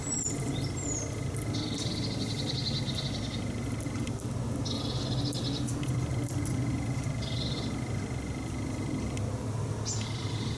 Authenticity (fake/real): real